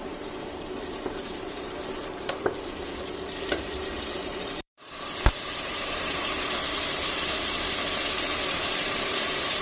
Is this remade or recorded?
remade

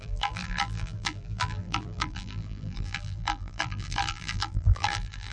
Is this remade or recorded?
remade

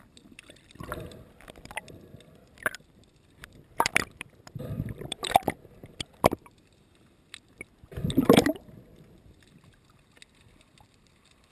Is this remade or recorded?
remade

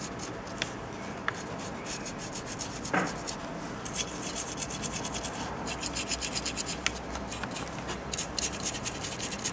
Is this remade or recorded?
recorded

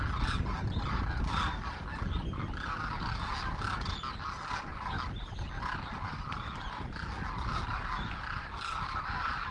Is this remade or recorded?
recorded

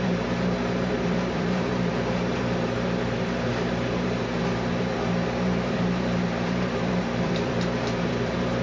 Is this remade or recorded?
remade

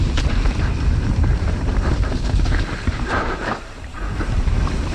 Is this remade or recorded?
remade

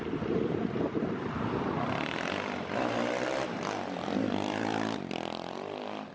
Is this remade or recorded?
remade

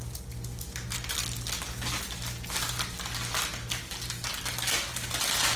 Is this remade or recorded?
recorded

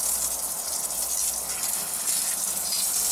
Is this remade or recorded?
recorded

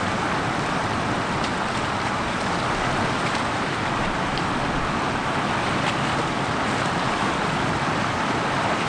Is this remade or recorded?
remade